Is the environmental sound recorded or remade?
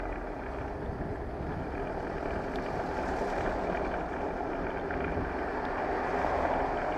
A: recorded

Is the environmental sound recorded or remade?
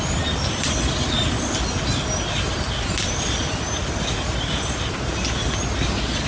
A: recorded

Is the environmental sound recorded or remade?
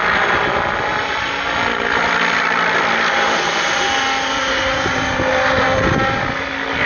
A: remade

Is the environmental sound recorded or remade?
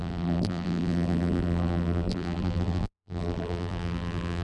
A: remade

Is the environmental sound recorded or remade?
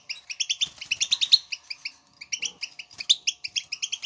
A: recorded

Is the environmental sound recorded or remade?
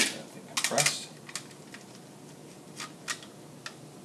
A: recorded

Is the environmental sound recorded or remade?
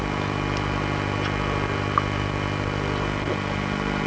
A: recorded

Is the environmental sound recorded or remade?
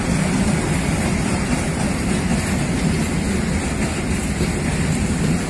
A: recorded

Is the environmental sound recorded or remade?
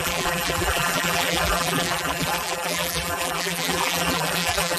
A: remade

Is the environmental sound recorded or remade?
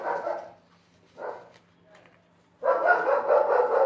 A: recorded